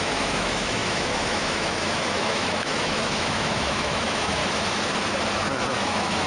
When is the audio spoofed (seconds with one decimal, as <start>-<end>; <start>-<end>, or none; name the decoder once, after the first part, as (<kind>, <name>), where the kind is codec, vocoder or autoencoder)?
0.0-4.4 (autoencoder, DAC-VAE); 5.7-6.3